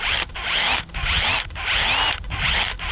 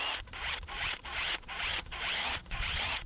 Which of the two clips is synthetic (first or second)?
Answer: second